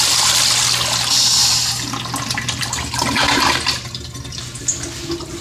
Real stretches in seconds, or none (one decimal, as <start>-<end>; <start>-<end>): 0.0-5.4